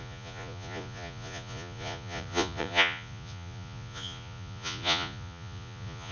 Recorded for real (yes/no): no